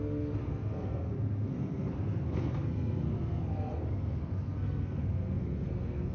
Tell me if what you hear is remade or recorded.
remade